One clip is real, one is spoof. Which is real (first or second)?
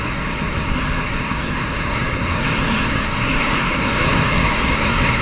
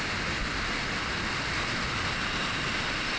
second